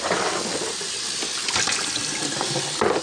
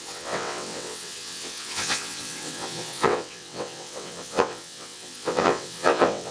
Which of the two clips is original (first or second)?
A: first